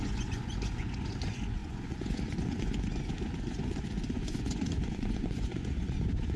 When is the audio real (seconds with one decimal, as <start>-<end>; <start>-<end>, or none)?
none